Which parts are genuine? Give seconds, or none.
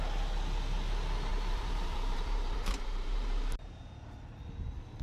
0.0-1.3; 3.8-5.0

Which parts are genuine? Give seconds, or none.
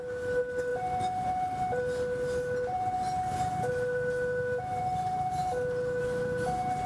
0.0-6.9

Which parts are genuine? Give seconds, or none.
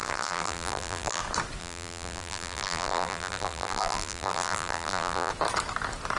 1.2-1.6; 5.3-6.2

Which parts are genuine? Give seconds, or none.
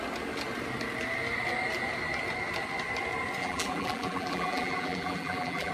0.0-3.4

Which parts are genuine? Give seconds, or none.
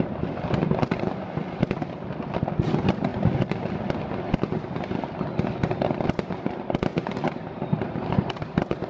0.0-6.9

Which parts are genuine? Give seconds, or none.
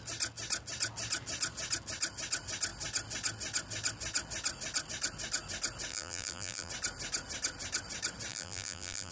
0.0-5.9; 6.7-8.3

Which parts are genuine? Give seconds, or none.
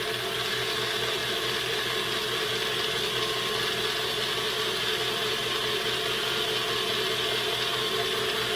0.0-8.6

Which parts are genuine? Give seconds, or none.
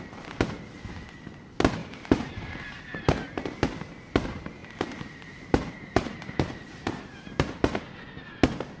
0.0-1.8; 2.8-4.6; 7.8-8.8